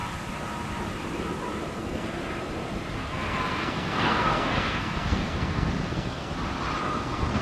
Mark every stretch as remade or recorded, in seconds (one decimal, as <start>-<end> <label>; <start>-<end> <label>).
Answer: 0.0-1.8 recorded; 1.8-2.2 remade; 2.2-3.0 recorded; 3.0-6.3 remade; 6.3-6.8 recorded; 6.8-7.4 remade